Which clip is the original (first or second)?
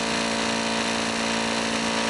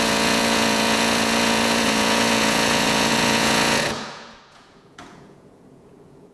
first